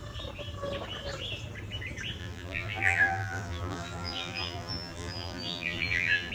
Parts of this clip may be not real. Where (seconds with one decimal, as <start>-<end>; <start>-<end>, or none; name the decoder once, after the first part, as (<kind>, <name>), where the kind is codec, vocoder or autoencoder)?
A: 2.2-6.3 (vocoder, BigVGAN v2)